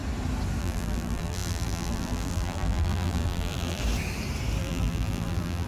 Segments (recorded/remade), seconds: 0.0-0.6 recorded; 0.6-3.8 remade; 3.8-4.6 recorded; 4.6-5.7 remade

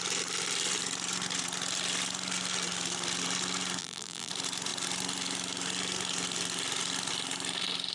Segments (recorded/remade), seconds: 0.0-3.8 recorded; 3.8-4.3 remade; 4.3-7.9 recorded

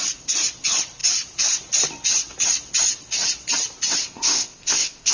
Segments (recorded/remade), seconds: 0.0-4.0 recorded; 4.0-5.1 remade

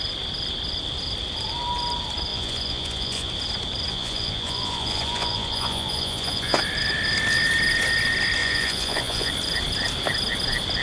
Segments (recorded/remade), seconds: 0.0-2.3 recorded; 2.3-3.3 remade; 3.3-3.9 recorded; 3.9-6.6 remade; 6.6-8.4 recorded; 8.4-9.3 remade; 9.3-10.8 recorded

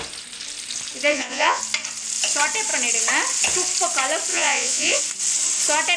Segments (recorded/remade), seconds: 0.0-1.1 recorded; 1.1-1.6 remade; 1.6-4.3 recorded; 4.3-5.0 remade; 5.0-6.0 recorded

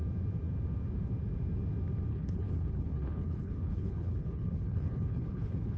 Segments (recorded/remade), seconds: 0.0-2.1 recorded; 2.1-5.8 remade